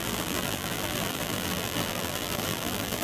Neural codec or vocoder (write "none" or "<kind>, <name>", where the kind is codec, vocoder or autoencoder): vocoder, BigVGAN v2